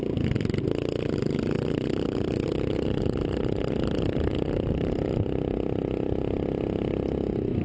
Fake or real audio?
real